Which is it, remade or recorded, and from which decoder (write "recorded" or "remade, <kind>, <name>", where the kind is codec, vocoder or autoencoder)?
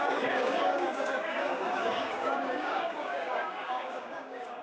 remade, codec, DAC